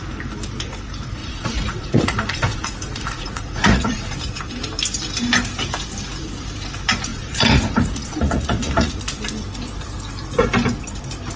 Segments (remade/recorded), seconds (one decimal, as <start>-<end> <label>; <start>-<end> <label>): 0.0-1.2 recorded; 1.2-4.4 remade; 4.4-7.1 recorded; 7.1-8.9 remade; 8.9-11.4 recorded